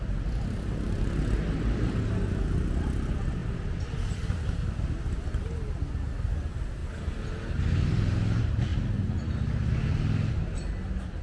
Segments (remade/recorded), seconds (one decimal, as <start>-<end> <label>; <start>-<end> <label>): 0.0-11.2 recorded